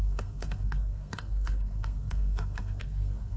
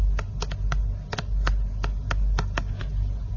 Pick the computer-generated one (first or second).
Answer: first